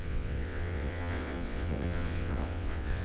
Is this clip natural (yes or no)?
no